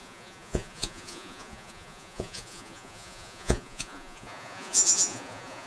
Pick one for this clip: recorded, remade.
remade